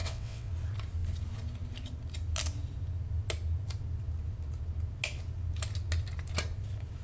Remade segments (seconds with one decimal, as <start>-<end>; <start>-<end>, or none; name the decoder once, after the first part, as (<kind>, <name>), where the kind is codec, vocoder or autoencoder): 0.0-0.5 (vocoder, WaveNeXt)